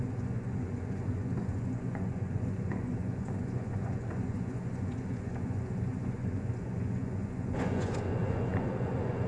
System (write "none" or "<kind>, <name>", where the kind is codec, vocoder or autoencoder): vocoder, Vocos